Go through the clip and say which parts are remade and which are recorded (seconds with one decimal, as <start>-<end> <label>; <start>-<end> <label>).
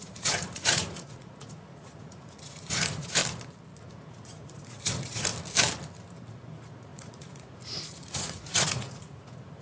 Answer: 0.0-3.2 remade; 3.2-3.8 recorded; 3.8-5.3 remade; 5.3-6.3 recorded; 6.3-9.6 remade